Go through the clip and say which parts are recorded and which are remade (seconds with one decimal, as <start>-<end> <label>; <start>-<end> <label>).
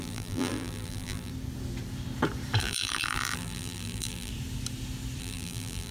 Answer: 0.0-1.3 remade; 1.3-2.6 recorded; 2.6-4.3 remade; 4.3-5.2 recorded; 5.2-5.9 remade